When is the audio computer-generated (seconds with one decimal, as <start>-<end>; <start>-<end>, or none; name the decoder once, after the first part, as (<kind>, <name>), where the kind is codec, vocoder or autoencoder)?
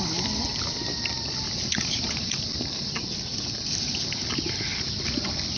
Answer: 0.0-5.6 (vocoder, BigVGAN v2)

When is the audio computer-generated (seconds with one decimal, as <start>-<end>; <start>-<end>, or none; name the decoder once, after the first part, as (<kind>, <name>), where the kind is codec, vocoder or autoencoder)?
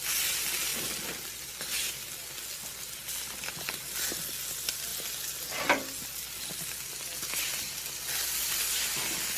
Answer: none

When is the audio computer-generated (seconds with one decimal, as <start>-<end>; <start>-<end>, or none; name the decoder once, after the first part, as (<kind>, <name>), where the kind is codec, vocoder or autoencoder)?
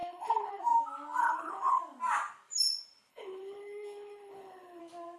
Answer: 0.0-0.6 (codec, HILCodec); 1.2-1.8; 3.1-4.8